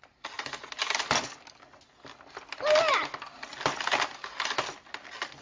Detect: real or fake real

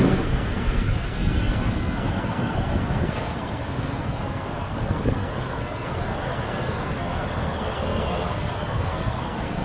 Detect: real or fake fake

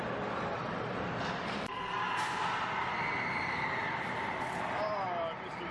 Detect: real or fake real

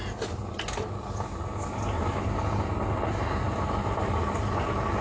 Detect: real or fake real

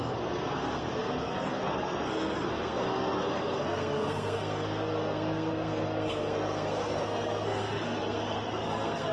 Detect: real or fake fake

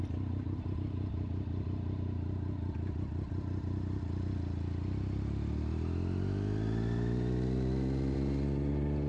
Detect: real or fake real